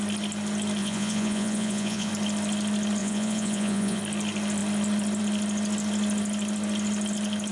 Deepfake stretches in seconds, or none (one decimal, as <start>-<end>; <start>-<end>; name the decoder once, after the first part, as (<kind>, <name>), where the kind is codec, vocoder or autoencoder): 0.8-2.1 (vocoder, Vocos); 3.0-4.0